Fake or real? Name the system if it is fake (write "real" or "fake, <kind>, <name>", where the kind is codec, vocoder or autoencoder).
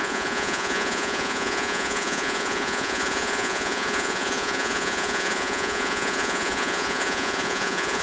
fake, vocoder, Vocos